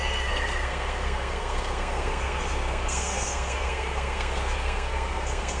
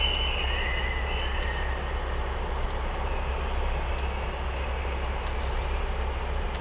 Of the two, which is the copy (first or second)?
first